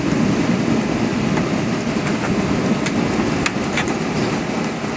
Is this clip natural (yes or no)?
yes